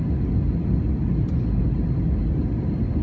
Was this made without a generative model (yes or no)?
yes